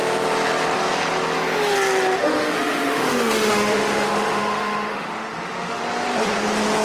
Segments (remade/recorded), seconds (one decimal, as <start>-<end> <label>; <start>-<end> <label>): 0.0-2.2 recorded; 2.2-5.8 remade; 5.8-6.8 recorded

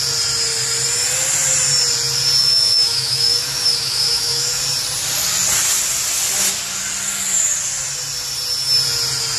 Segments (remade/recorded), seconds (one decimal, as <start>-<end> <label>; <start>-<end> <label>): 0.0-2.4 recorded; 2.4-4.6 remade; 4.6-9.4 recorded

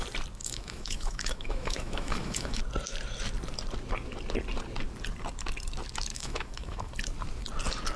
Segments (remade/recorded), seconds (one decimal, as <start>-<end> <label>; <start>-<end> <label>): 0.0-0.4 recorded; 0.4-2.6 remade; 2.6-6.1 recorded; 6.1-6.9 remade; 6.9-8.0 recorded

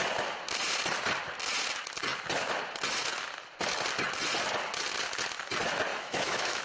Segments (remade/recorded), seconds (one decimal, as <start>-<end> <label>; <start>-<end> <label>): 0.0-5.9 recorded; 5.9-6.6 remade

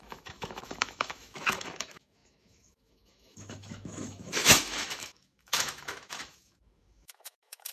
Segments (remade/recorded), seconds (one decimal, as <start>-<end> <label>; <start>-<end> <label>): 0.0-7.7 remade

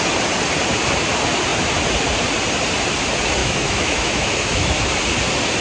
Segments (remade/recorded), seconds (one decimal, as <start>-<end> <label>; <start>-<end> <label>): 0.0-3.4 recorded; 3.4-4.9 remade; 4.9-5.6 recorded

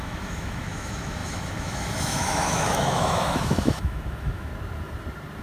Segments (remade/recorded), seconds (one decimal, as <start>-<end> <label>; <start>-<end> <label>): 0.0-4.5 remade; 4.5-5.4 recorded

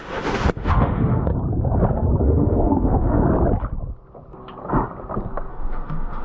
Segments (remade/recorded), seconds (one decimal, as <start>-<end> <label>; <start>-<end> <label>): 0.0-1.3 remade; 1.3-2.2 recorded; 2.2-3.2 remade; 3.2-5.5 recorded; 5.5-6.2 remade